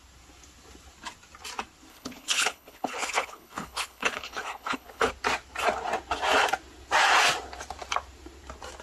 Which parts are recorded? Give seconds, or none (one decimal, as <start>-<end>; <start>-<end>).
0.0-1.9; 5.1-8.8